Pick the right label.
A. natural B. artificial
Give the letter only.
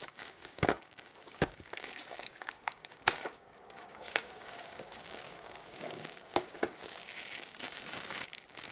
B